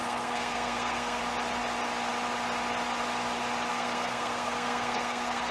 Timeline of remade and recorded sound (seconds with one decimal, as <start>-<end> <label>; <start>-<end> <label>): 0.0-1.2 remade; 1.2-3.7 recorded; 3.7-5.5 remade